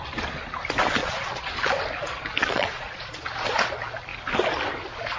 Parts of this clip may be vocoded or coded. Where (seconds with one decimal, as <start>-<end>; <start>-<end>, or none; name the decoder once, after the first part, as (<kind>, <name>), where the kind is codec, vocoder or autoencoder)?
1.0-1.5 (vocoder, Vocos); 2.4-3.0

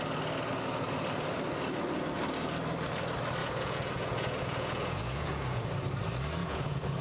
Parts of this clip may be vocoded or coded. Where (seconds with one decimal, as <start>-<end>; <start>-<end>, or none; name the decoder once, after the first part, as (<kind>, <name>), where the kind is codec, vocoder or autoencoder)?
3.4-5.6 (vocoder, Vocos); 6.4-7.0

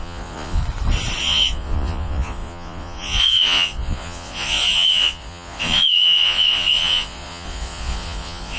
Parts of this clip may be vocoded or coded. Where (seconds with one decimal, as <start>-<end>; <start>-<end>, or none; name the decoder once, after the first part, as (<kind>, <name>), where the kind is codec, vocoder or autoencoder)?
0.0-0.6 (vocoder, Vocos); 1.2-8.6